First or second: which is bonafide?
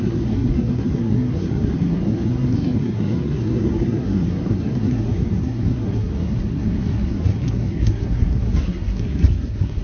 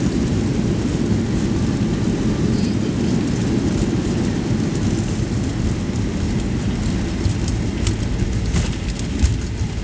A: second